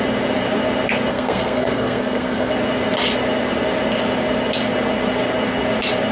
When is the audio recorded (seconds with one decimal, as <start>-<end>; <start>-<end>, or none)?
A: 0.0-1.1; 2.5-6.1